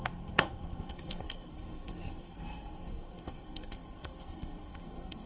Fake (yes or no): yes